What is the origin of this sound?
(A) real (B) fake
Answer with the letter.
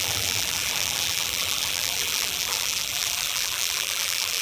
B